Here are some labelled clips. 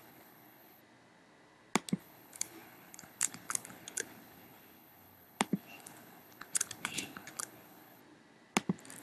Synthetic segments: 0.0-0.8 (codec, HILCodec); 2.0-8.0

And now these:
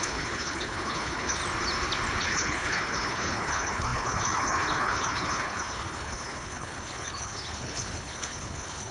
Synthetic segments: 0.0-1.4 (codec, HILCodec); 2.2-8.9

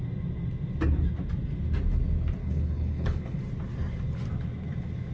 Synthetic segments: 2.4-3.4 (codec, HILCodec)

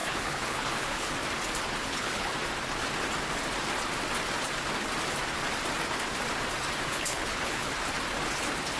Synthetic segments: 0.0-1.1 (codec, HILCodec); 1.8-2.3; 6.9-7.7

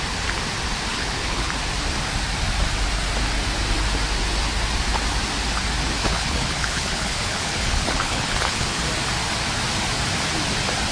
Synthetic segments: 0.9-1.5 (codec, HILCodec); 6.0-8.8

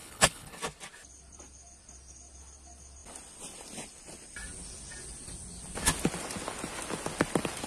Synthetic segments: 0.0-0.6 (codec, HILCodec)

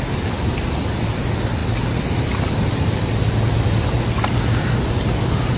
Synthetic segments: none

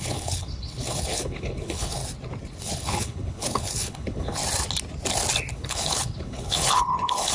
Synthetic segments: 0.0-2.0 (codec, HILCodec); 2.6-4.4; 5.5-7.3